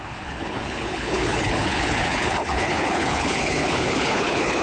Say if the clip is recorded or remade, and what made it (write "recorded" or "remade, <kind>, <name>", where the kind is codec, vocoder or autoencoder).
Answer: remade, codec, HILCodec